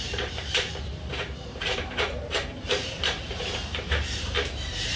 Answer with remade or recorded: remade